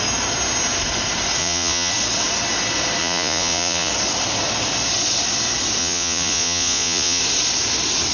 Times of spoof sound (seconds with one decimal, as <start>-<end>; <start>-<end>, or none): 1.4-1.9; 3.0-3.9; 5.8-7.2